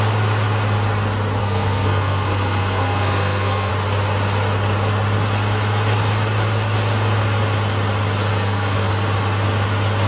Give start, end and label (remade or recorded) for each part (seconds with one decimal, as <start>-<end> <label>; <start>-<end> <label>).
0.0-1.4 recorded; 1.4-3.7 remade; 3.7-8.3 recorded; 8.3-8.9 remade; 8.9-10.1 recorded